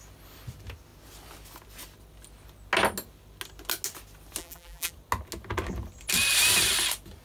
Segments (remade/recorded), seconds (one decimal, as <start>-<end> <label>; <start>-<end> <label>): 0.0-4.4 recorded; 4.4-4.9 remade; 4.9-7.2 recorded